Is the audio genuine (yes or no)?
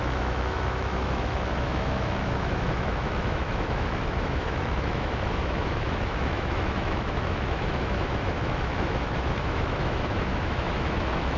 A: no